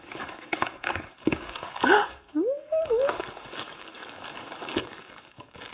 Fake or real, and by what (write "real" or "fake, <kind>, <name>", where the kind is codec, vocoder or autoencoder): fake, codec, DAC